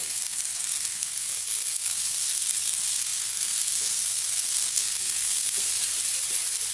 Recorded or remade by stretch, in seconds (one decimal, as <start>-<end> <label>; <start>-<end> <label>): 0.0-5.9 remade; 5.9-6.7 recorded